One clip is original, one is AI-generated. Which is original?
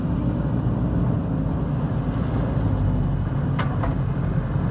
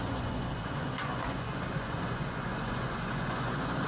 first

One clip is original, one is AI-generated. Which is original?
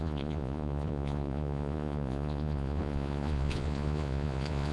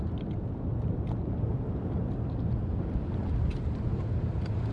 second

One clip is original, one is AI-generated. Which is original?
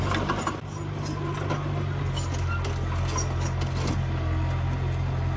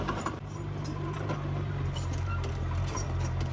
first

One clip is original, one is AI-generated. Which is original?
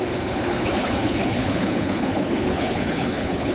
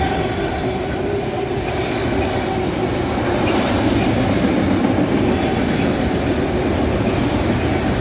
second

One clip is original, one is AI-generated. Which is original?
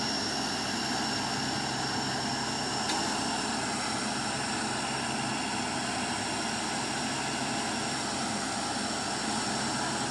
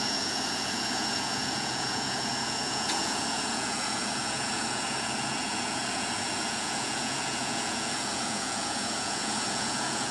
first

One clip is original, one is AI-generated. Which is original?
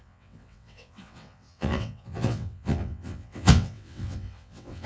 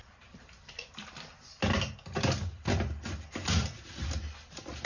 second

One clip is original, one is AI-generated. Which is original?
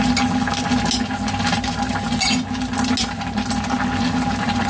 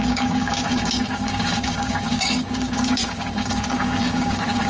first